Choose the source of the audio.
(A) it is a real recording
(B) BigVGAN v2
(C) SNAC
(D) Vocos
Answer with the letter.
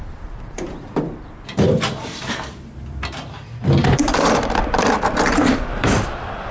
B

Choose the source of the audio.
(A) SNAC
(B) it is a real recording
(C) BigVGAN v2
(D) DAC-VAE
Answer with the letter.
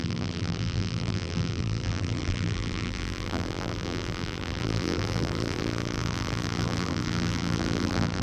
C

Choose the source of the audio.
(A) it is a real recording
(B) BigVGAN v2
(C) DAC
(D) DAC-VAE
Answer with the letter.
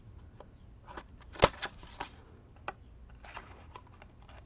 A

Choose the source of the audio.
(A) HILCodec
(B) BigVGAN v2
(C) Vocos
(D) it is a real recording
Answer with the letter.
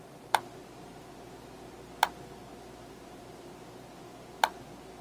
D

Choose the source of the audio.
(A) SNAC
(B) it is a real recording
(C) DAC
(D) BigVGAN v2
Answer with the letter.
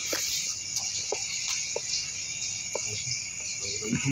B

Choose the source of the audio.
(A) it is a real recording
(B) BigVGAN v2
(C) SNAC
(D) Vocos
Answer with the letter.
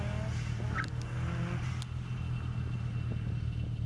A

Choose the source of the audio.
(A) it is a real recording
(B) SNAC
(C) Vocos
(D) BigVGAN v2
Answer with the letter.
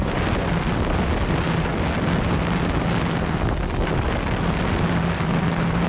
A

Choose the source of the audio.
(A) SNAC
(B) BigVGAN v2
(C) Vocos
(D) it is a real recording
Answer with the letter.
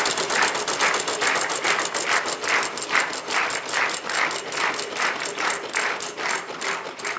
D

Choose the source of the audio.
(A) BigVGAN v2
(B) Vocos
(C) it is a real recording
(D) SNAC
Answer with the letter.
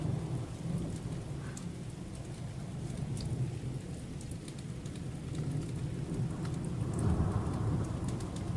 C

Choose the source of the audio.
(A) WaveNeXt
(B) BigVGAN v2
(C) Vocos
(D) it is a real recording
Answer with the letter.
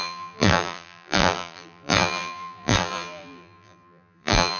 B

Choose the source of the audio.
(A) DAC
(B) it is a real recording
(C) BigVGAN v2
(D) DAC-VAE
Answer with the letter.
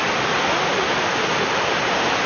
B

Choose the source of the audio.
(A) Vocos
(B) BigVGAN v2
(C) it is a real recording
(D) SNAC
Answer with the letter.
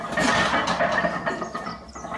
C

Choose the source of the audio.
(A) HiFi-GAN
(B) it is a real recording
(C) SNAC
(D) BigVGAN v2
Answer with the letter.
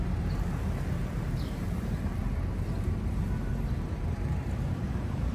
D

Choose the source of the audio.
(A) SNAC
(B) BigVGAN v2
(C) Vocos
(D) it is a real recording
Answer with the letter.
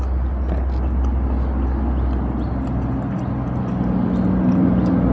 D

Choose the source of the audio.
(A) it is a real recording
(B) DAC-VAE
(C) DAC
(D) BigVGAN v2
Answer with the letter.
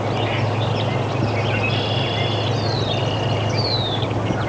A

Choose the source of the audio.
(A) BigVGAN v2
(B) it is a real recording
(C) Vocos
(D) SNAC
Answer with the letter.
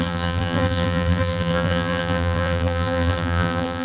A